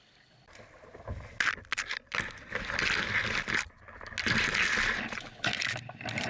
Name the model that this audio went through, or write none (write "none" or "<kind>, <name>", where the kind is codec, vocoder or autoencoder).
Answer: none